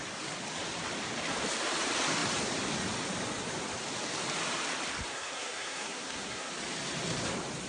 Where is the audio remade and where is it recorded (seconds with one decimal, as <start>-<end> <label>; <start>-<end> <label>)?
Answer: 0.0-5.1 recorded; 5.1-6.5 remade; 6.5-7.7 recorded